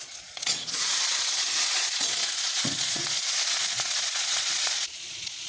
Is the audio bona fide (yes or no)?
no